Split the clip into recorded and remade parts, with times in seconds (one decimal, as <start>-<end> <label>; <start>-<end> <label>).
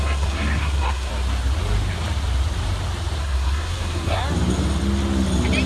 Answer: 0.0-1.1 remade; 1.1-3.2 recorded; 3.2-4.2 remade; 4.2-5.7 recorded